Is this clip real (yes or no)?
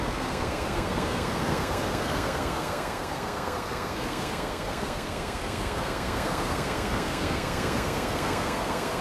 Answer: no